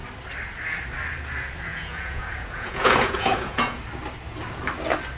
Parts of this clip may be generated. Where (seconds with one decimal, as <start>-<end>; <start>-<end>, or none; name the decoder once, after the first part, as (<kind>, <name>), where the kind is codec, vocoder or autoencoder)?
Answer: 1.7-3.8 (vocoder, Vocos)